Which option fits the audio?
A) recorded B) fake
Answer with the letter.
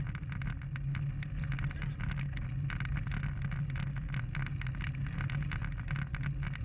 A